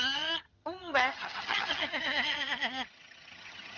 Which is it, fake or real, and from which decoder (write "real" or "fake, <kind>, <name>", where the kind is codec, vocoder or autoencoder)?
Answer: fake, vocoder, HiFi-GAN